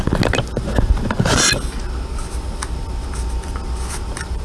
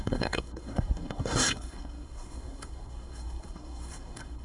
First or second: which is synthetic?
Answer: second